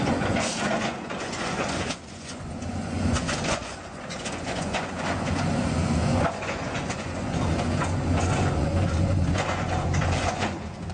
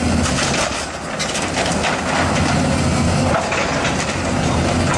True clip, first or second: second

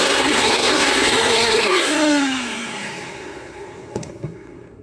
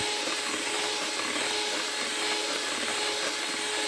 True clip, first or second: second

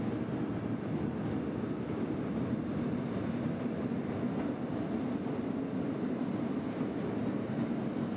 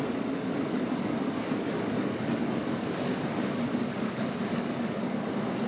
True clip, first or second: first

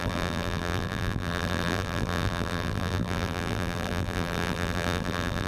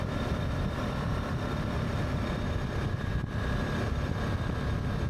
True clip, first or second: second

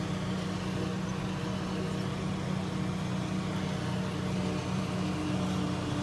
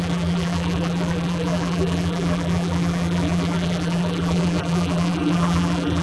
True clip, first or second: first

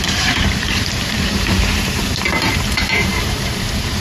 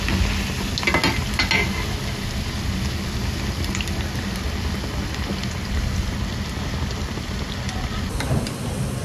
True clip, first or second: second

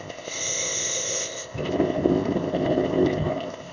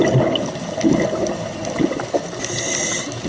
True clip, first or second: second